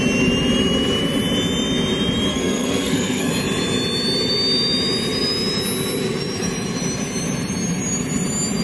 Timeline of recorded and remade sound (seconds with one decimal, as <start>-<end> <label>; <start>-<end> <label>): 0.0-2.3 recorded; 2.3-3.3 remade; 3.3-8.6 recorded

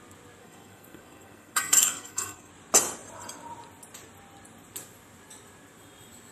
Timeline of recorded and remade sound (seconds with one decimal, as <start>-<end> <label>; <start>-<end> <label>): 0.0-0.4 recorded; 0.4-2.5 remade; 2.5-6.3 recorded